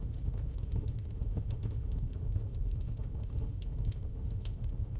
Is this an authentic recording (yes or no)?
no